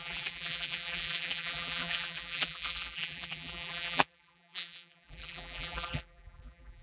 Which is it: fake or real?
fake